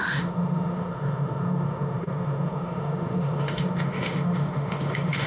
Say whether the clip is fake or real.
fake